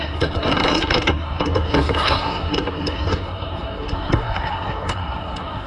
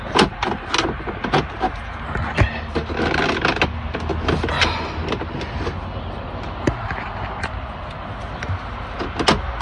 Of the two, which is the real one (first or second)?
second